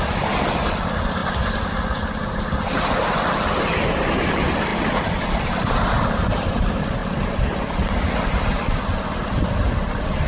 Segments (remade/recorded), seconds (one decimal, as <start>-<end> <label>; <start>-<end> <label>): 0.0-1.2 remade; 1.2-4.3 recorded; 4.3-4.7 remade; 4.7-5.4 recorded; 5.4-7.0 remade; 7.0-9.7 recorded; 9.7-10.3 remade